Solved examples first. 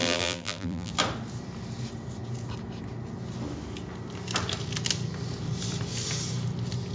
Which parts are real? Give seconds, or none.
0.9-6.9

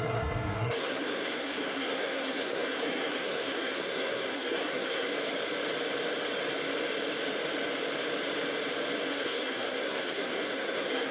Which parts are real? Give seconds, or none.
5.1-9.1

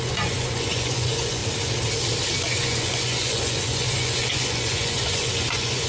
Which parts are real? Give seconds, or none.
1.4-2.4

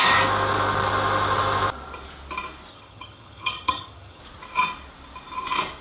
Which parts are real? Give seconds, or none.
0.0-2.7; 4.2-5.8

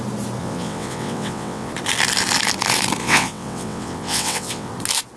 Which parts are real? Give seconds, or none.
0.0-0.4; 1.7-3.0; 4.7-5.2

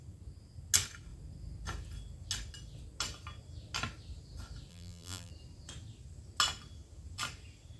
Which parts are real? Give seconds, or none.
0.0-4.7; 5.3-7.8

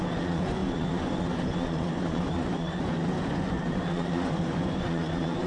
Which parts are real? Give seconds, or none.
none